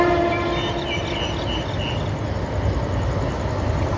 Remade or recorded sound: recorded